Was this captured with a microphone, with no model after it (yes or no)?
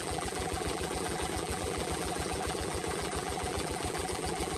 no